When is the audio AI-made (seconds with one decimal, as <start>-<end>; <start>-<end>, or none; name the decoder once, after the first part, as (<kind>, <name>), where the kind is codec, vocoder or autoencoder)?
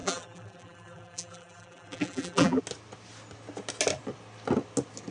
0.0-2.6 (vocoder, BigVGAN v2)